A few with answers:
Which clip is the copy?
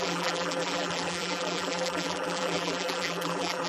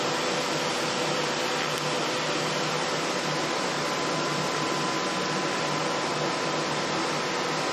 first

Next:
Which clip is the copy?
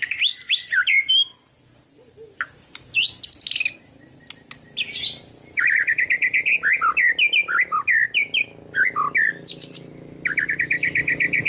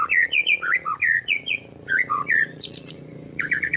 second